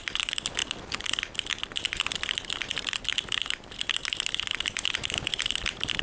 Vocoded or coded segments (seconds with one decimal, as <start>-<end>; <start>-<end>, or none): none